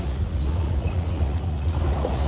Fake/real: fake